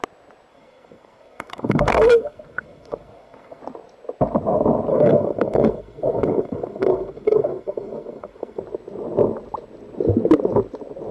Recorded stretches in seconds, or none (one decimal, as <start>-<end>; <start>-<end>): 0.0-0.5; 3.6-4.9; 8.6-11.1